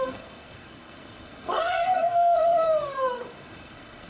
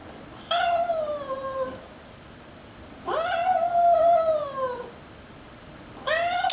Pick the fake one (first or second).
first